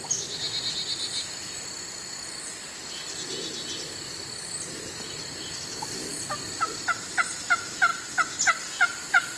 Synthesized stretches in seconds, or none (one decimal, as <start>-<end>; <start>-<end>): none